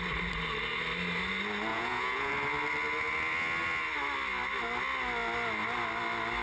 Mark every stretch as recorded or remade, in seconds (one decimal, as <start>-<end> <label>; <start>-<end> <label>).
0.0-1.7 recorded; 1.7-2.3 remade; 2.3-6.4 recorded